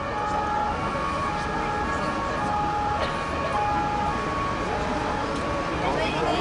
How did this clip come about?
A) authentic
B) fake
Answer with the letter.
A